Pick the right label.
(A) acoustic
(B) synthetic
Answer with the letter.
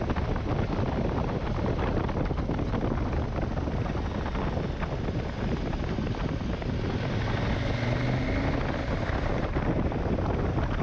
A